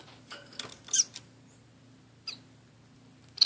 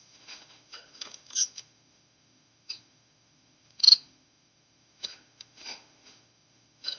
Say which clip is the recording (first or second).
first